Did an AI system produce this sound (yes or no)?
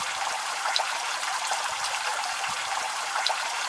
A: yes